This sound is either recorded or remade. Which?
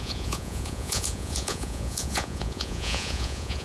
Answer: remade